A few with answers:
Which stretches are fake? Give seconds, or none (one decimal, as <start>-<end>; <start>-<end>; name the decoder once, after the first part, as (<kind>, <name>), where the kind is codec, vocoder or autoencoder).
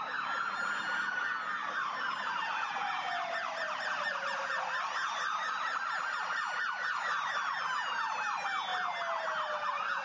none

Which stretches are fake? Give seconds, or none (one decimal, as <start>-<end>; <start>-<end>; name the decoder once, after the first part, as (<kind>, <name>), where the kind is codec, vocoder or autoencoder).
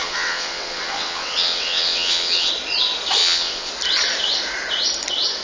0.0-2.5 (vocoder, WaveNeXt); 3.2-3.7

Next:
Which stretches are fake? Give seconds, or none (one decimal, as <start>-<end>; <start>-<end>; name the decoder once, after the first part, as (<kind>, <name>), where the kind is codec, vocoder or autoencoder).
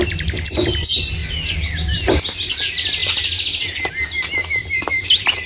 none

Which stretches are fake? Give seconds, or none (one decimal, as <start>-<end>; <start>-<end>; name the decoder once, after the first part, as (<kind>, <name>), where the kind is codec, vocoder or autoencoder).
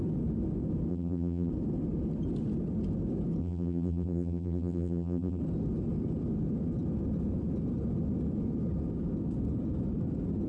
0.9-1.5 (vocoder, BigVGAN v2); 3.4-5.4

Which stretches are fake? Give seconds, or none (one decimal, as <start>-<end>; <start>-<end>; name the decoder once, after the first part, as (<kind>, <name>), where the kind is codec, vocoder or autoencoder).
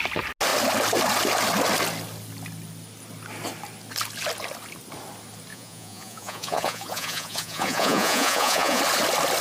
5.5-8.8 (vocoder, Vocos)